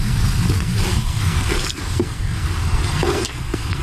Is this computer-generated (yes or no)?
yes